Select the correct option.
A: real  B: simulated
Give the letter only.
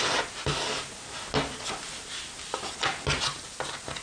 A